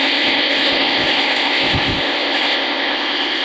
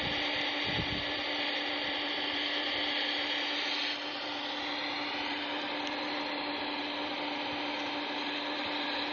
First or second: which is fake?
first